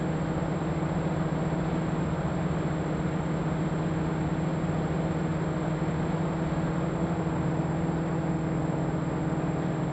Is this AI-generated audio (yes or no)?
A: no